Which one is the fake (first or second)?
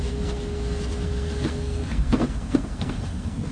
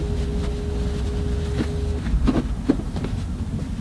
first